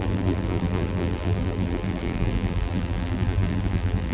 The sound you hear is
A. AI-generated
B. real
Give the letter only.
A